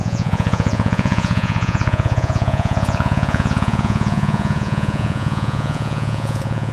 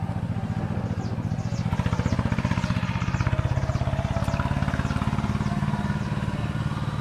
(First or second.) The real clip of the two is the second